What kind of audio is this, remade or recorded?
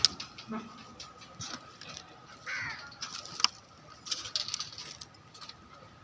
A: recorded